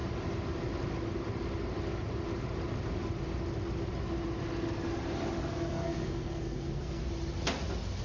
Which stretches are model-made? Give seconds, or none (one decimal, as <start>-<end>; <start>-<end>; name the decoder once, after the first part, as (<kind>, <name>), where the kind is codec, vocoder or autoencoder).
5.5-7.0 (codec, SNAC)